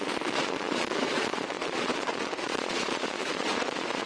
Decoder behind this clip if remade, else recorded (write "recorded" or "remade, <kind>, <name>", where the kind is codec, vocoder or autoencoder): remade, vocoder, Vocos